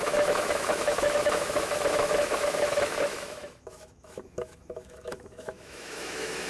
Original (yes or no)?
no